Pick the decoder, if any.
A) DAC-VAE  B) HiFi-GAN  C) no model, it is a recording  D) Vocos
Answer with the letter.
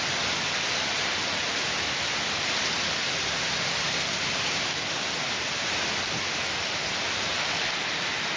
C